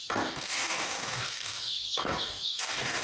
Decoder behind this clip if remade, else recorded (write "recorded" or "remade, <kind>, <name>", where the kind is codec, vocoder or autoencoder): remade, codec, DAC